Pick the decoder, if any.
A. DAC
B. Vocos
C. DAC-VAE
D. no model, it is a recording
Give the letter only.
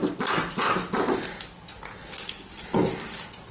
D